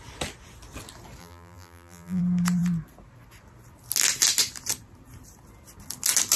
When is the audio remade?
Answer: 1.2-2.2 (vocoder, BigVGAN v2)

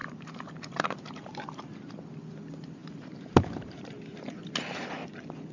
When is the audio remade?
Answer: 0.0-1.6 (vocoder, BigVGAN v2); 2.8-4.9

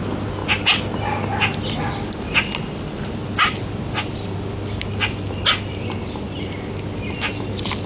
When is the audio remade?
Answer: none

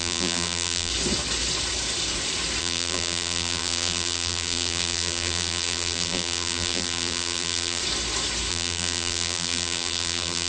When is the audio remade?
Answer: 0.0-0.9 (vocoder, BigVGAN v2); 2.6-7.8; 8.5-10.5

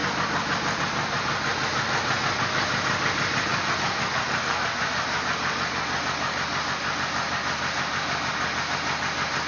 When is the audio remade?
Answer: none